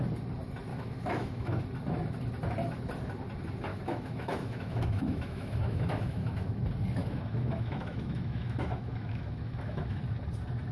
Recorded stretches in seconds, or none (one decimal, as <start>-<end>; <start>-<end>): 0.0-0.7; 1.6-3.7; 6.6-7.0; 10.0-10.7